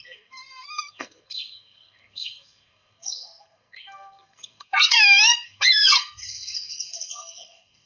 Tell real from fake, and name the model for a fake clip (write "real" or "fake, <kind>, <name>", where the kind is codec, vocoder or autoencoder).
fake, codec, SNAC